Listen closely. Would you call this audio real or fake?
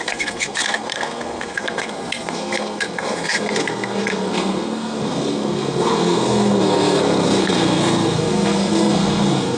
fake